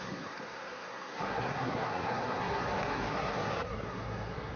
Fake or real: fake